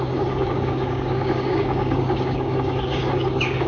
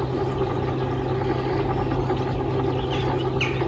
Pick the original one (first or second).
second